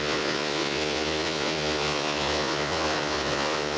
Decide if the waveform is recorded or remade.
remade